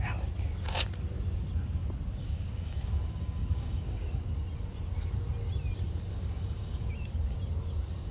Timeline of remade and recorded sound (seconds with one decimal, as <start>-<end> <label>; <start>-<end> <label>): 0.0-2.2 recorded; 2.2-4.2 remade; 4.2-6.1 recorded; 6.1-6.9 remade; 6.9-8.1 recorded